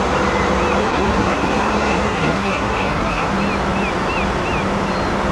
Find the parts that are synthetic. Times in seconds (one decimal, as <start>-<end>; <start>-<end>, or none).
0.8-3.3